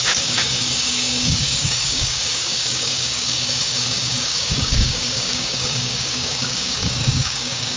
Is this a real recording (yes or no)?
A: no